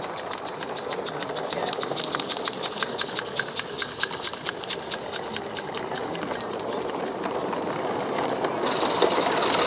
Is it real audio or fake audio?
real